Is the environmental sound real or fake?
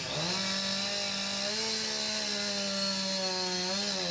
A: real